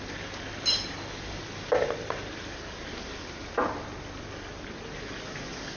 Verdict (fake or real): real